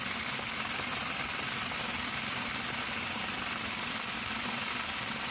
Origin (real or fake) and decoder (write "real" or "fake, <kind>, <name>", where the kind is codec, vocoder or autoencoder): real